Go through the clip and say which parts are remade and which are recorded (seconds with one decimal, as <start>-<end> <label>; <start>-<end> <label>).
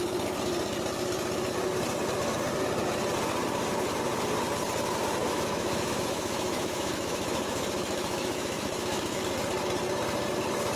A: 0.0-5.2 recorded; 5.2-9.2 remade; 9.2-10.8 recorded